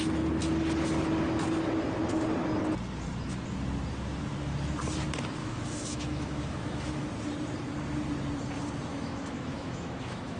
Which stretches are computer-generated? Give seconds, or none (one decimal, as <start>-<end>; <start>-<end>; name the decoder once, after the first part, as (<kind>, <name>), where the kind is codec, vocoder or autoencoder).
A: 5.4-7.1 (autoencoder, DAC-VAE); 8.9-10.4